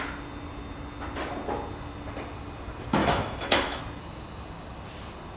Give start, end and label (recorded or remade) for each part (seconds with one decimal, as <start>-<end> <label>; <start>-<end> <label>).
0.0-3.0 recorded; 3.0-3.8 remade; 3.8-5.4 recorded